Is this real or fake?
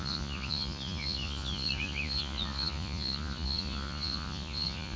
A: fake